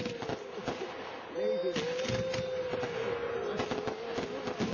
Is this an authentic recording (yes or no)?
yes